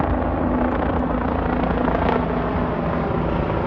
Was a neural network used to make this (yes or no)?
no